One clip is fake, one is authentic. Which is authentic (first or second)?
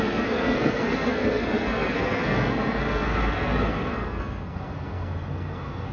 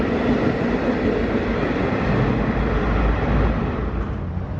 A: second